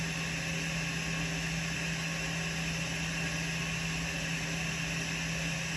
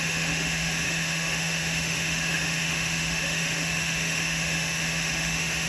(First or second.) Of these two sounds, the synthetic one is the second